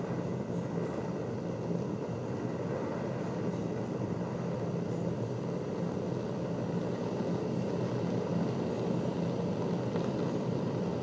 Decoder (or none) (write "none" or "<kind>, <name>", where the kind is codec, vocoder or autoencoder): none